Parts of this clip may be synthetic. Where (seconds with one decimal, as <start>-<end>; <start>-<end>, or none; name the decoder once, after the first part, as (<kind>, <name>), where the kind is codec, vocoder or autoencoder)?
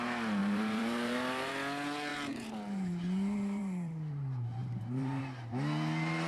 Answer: 0.4-1.5 (vocoder, BigVGAN v2); 2.1-5.2